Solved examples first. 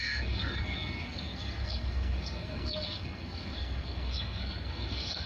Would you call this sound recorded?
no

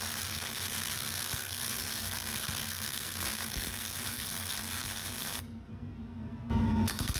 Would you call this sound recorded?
no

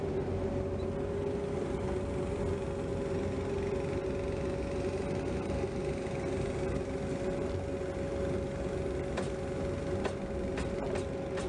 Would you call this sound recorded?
yes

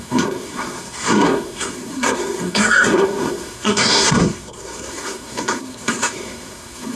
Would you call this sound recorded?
no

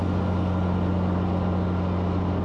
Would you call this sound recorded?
yes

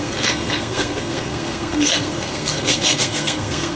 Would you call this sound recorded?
no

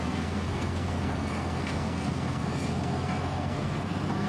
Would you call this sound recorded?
no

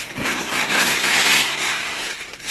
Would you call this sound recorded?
no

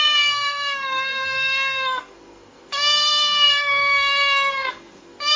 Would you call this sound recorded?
no